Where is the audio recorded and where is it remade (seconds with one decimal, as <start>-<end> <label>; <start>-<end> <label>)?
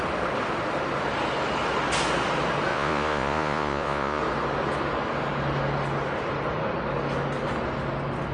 0.0-2.7 recorded; 2.7-4.2 remade; 4.2-8.3 recorded